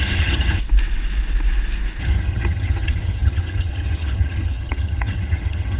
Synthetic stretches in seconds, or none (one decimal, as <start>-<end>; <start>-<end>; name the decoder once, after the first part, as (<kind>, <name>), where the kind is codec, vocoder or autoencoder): 0.0-0.6 (vocoder, HiFi-GAN); 2.0-5.8